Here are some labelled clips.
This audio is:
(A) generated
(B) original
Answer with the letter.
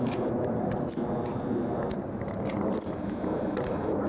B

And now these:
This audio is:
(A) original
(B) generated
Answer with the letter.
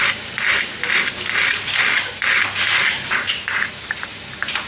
A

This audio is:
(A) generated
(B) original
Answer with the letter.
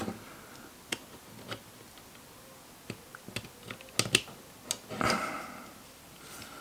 B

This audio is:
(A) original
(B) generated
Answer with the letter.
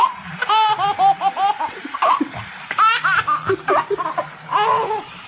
A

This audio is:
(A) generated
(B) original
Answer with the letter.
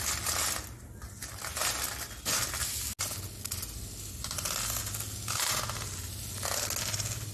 B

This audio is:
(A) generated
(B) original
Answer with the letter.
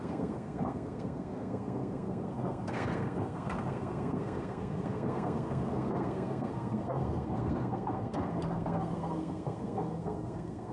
A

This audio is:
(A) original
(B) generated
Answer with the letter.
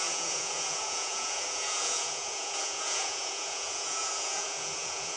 B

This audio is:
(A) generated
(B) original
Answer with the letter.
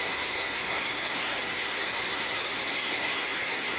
A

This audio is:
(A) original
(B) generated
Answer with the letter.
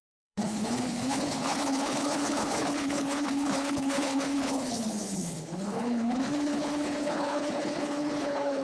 B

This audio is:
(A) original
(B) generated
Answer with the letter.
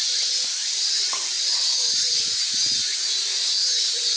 A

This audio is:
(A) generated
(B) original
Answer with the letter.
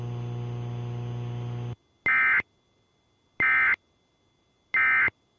B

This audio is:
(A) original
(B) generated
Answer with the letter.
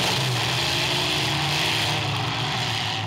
A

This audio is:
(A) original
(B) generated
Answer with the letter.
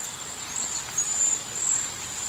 A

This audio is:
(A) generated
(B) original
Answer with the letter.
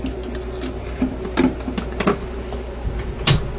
B